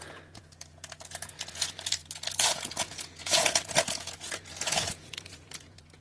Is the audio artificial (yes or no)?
yes